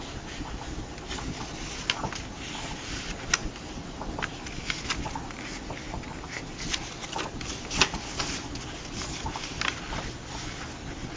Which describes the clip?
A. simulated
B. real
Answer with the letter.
B